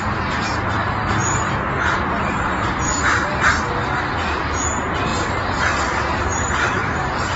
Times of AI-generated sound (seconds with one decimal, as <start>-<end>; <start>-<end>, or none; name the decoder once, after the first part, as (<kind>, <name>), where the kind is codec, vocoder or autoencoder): 5.1-7.4 (vocoder, BigVGAN v2)